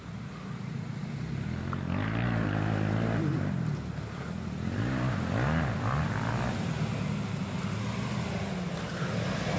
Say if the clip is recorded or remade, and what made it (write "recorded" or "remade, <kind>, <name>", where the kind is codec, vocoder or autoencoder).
recorded